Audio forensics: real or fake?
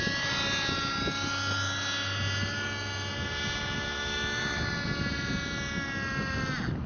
real